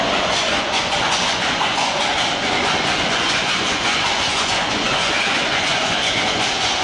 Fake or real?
fake